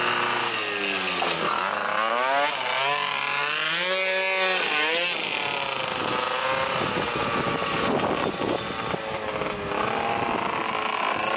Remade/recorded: recorded